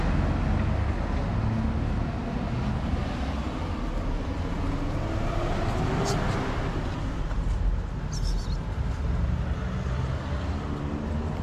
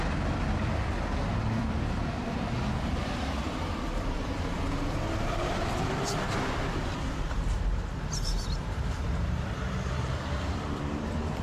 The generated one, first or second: second